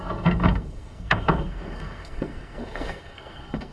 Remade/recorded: remade